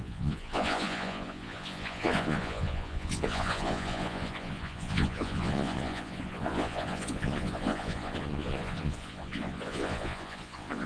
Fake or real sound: fake